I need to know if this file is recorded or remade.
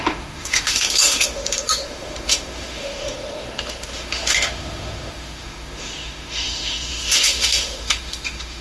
remade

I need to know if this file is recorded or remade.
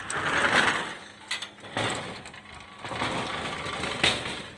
recorded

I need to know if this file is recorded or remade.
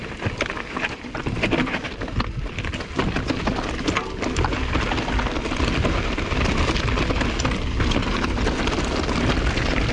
recorded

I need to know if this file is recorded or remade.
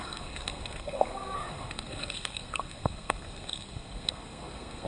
remade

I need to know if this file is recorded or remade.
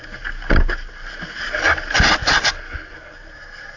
recorded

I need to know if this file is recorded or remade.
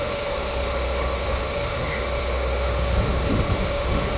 remade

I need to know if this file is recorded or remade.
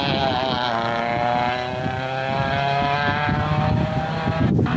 recorded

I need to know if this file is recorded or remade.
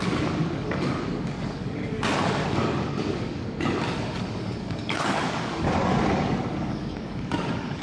remade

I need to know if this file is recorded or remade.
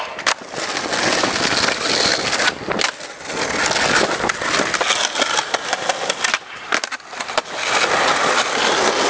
recorded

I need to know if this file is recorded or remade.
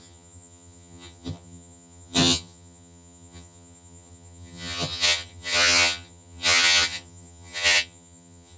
remade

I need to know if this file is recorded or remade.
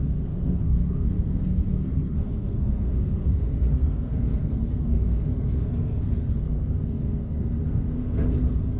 remade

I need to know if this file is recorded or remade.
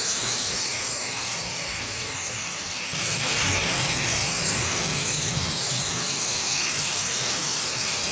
remade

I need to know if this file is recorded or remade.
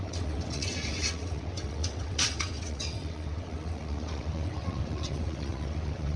remade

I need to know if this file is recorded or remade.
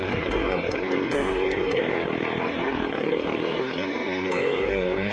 remade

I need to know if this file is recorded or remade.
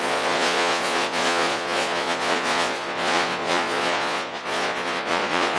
remade